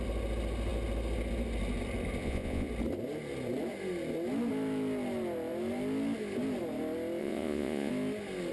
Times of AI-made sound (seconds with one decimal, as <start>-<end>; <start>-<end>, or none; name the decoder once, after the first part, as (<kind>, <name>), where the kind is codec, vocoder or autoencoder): 2.2-2.7 (vocoder, Vocos); 7.2-7.9